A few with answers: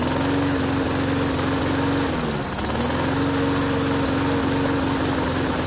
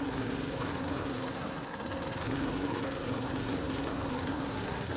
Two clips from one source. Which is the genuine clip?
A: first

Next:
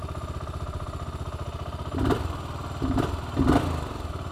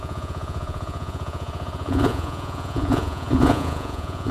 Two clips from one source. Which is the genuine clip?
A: first